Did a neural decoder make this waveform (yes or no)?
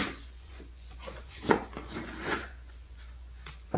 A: yes